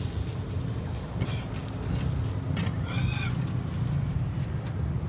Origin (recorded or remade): recorded